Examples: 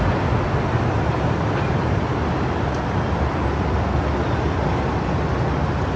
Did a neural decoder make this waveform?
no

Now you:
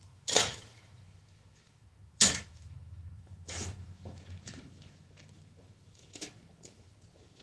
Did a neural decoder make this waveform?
yes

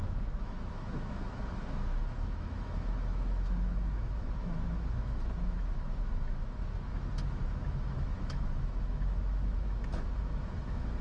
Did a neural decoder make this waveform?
yes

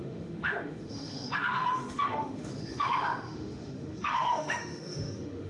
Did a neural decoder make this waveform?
yes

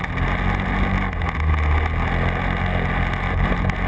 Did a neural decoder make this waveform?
no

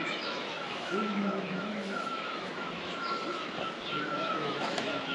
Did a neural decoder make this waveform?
yes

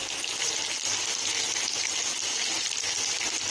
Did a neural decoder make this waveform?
no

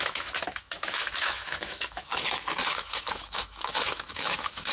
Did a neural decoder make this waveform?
yes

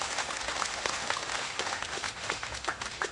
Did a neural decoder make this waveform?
yes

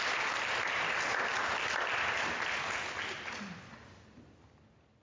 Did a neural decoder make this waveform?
no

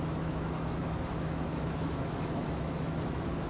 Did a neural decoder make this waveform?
yes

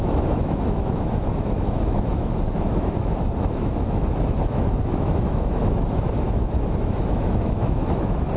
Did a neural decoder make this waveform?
yes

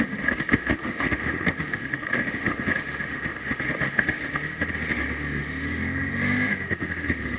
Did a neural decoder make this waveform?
yes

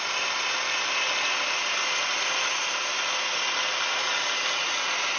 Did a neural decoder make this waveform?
no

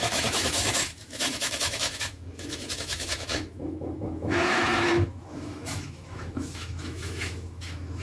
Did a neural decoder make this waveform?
yes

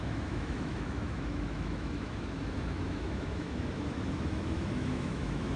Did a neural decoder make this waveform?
yes